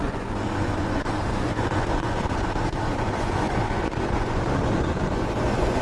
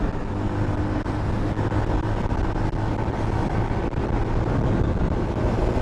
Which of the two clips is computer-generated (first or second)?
first